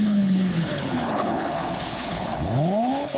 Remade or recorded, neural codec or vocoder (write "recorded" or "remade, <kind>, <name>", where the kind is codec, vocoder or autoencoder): remade, codec, HILCodec